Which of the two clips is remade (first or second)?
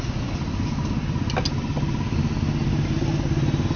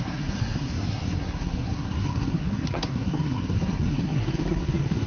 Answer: second